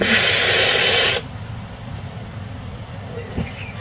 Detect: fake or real real